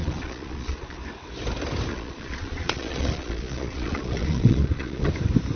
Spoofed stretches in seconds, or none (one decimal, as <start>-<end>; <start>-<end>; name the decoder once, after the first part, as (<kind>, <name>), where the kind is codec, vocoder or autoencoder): 0.0-1.0 (vocoder, Vocos); 1.9-5.1